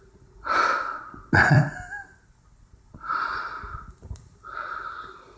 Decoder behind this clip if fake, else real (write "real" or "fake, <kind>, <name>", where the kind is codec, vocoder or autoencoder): real